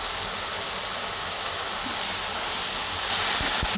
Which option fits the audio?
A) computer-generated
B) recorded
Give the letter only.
B